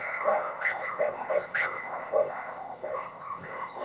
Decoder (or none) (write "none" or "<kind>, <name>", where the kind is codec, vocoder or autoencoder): codec, ZipCodec